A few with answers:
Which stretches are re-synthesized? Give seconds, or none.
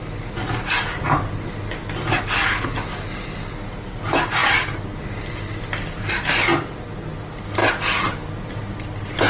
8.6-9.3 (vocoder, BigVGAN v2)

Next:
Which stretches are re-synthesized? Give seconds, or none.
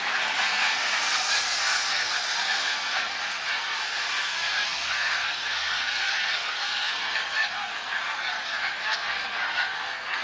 0.0-10.2 (codec, SNAC)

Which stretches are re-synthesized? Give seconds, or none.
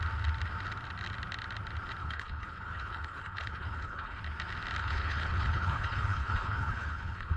2.0-4.2 (codec, HILCodec); 4.8-7.4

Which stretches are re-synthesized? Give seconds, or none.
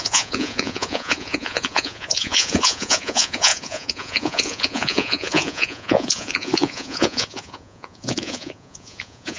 0.0-9.4 (vocoder, Vocos)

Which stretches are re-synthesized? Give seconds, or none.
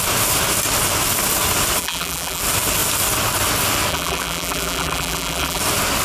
1.8-2.4 (vocoder, BigVGAN v2); 3.9-5.6